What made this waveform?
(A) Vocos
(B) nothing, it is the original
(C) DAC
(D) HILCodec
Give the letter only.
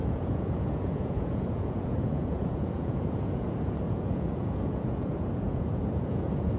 A